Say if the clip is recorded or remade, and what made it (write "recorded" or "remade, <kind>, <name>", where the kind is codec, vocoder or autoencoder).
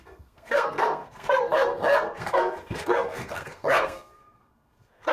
remade, codec, SNAC